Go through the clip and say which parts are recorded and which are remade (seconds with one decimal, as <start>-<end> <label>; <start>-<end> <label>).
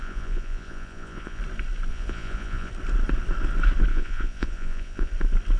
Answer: 0.0-1.4 remade; 1.4-1.9 recorded; 1.9-2.7 remade; 2.7-3.9 recorded; 3.9-5.1 remade; 5.1-5.6 recorded